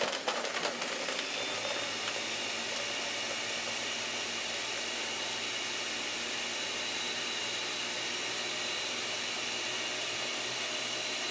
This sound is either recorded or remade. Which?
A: recorded